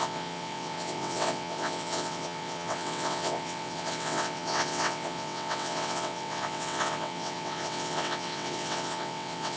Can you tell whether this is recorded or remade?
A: remade